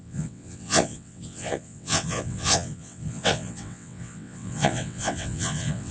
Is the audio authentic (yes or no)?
no